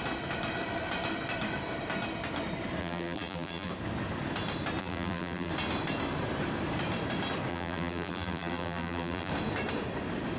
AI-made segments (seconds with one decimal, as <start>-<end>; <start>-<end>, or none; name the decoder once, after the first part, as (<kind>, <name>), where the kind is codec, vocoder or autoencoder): 2.8-3.7 (vocoder, BigVGAN v2); 4.8-5.5; 7.5-9.3